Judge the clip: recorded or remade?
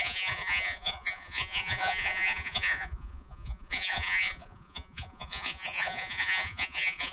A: remade